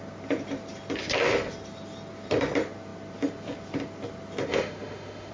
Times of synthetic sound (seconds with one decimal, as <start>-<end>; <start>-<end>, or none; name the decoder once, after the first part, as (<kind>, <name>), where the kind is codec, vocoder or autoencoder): 4.5-5.3 (autoencoder, DAC-VAE)